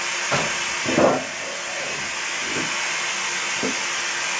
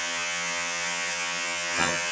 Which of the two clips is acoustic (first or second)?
first